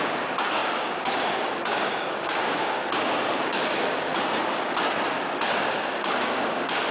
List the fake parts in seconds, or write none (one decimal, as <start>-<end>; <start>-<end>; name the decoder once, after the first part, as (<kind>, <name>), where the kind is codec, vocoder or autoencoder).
0.0-2.8 (codec, DAC); 3.3-4.1; 5.7-6.9